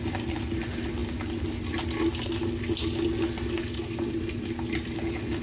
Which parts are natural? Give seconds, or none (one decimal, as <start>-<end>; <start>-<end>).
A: 0.0-5.4